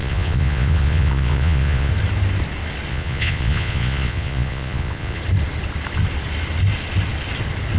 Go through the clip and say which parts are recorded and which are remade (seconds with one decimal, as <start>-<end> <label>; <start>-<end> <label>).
0.0-1.9 remade; 1.9-2.9 recorded; 2.9-5.2 remade; 5.2-7.8 recorded